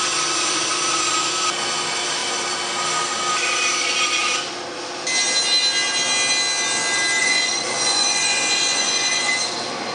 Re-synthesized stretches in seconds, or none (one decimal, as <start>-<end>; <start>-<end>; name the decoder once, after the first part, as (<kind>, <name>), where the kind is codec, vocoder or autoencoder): 7.2-9.3 (vocoder, Vocos)